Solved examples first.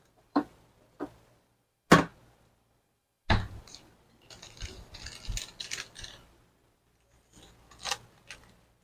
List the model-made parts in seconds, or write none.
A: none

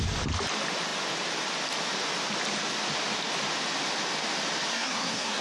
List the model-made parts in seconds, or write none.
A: 4.7-5.4

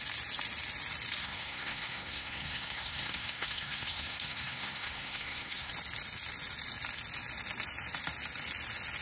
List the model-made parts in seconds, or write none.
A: 1.2-5.7

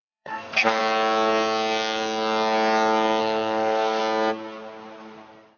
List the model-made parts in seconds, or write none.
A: 0.0-0.8; 3.2-4.0

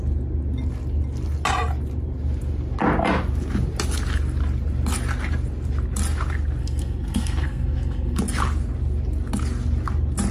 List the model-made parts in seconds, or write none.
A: 6.6-8.2

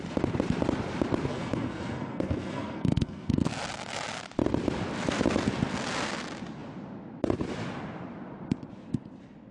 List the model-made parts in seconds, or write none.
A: 1.3-3.5

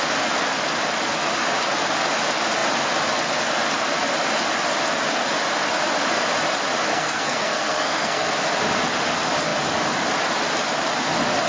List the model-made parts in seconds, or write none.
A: 6.9-8.3